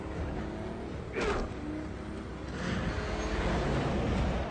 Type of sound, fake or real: real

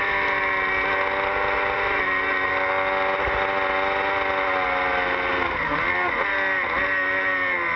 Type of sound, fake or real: real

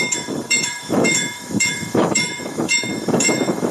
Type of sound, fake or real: fake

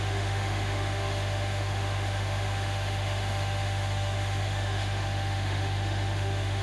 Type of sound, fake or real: fake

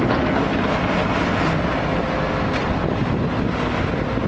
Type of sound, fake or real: real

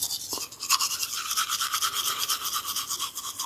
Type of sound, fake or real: real